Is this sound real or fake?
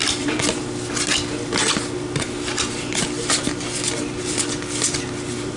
real